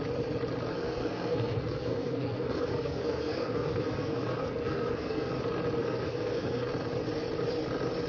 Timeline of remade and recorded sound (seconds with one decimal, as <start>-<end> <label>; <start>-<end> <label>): 0.0-0.7 recorded; 0.7-5.3 remade; 5.3-5.8 recorded; 5.8-6.7 remade; 6.7-8.1 recorded